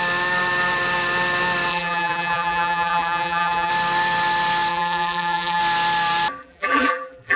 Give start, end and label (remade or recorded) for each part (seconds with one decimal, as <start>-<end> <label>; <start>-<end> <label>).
0.0-1.7 recorded; 1.7-3.7 remade; 3.7-4.7 recorded; 4.7-5.6 remade; 5.6-6.4 recorded; 6.4-7.4 remade